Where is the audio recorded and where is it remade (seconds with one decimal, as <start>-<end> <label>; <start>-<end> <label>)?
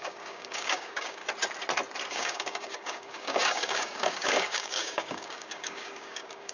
0.0-1.2 remade; 1.2-2.1 recorded; 2.1-6.5 remade